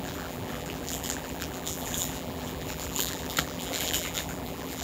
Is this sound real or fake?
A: fake